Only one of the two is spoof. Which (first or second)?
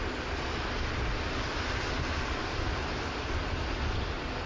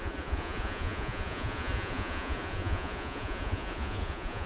second